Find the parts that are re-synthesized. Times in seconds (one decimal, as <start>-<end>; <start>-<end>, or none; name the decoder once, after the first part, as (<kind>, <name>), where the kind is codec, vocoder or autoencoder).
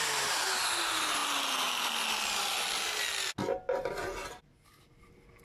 none